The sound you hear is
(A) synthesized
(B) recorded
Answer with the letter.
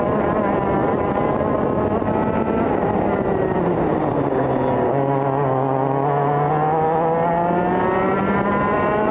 B